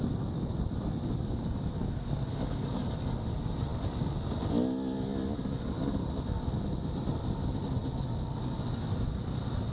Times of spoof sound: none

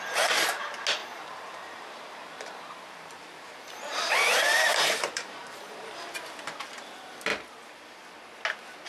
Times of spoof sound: 1.0-5.9

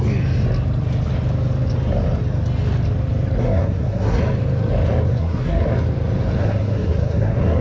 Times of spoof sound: 3.4-4.2; 5.1-5.7; 6.4-7.6

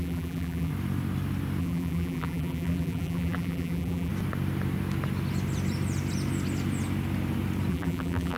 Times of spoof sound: 0.0-0.7; 1.6-4.1; 7.7-8.4

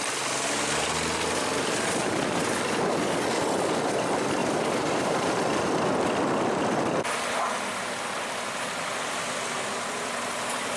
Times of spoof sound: 4.4-5.3